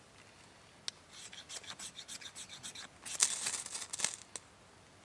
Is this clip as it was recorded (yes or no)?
yes